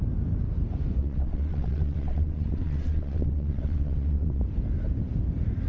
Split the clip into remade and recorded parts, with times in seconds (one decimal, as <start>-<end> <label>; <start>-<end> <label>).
0.0-1.0 recorded; 1.0-4.4 remade; 4.4-5.7 recorded